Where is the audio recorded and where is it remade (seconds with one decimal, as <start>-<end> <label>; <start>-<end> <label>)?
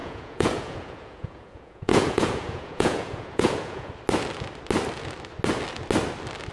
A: 0.0-3.9 remade; 3.9-6.5 recorded